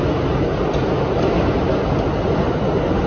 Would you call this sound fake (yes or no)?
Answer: no